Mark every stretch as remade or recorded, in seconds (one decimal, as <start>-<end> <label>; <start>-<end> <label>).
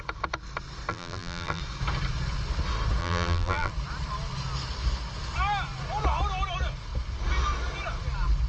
0.0-0.9 recorded; 0.9-1.6 remade; 1.6-3.0 recorded; 3.0-3.7 remade; 3.7-8.5 recorded